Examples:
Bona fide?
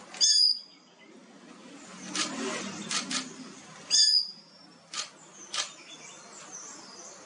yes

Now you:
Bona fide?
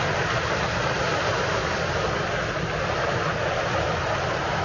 yes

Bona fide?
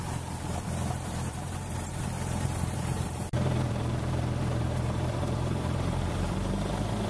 no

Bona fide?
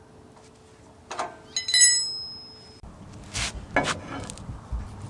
yes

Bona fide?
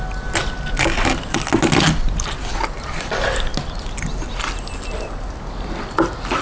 yes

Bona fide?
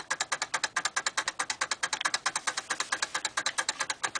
yes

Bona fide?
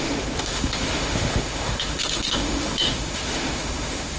no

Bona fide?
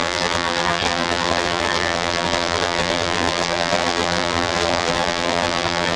no